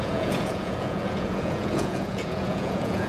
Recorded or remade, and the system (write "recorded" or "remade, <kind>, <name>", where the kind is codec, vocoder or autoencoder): remade, vocoder, Vocos